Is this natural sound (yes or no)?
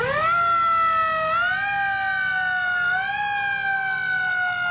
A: yes